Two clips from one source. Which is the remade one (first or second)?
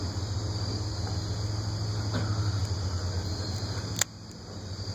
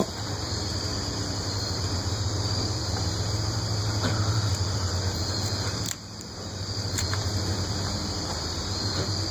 second